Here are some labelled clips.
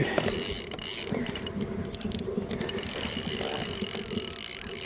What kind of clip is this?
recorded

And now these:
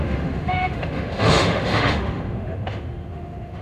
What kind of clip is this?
remade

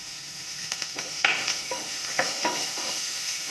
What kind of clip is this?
remade